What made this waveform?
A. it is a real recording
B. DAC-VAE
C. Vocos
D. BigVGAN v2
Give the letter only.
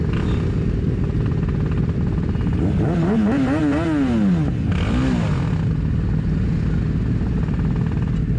A